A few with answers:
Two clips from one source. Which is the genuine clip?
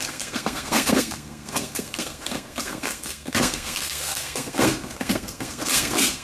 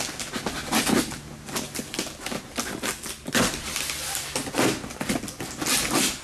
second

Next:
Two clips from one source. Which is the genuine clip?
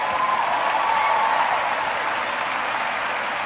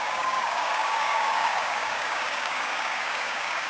first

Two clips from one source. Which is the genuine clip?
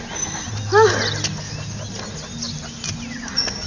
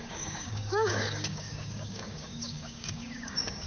first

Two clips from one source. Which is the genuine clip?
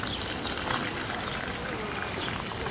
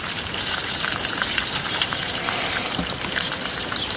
first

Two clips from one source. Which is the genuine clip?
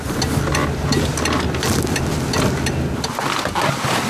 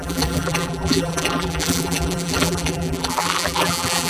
first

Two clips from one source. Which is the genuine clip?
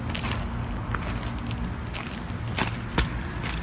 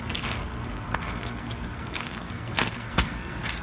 first